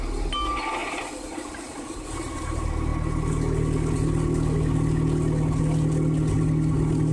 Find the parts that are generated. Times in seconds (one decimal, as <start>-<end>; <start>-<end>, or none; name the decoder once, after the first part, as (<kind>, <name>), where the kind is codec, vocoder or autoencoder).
0.8-2.0 (vocoder, BigVGAN v2)